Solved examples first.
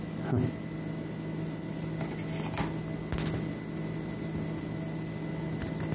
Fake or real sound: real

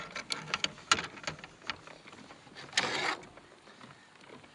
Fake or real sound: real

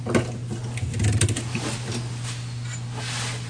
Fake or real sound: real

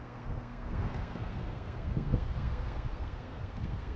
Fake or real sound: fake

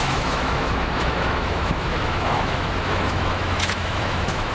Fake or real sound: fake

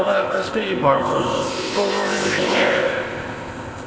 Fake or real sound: fake